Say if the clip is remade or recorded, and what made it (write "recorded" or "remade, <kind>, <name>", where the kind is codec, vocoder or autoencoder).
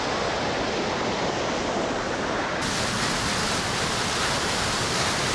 recorded